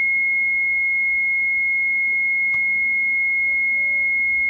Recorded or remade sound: recorded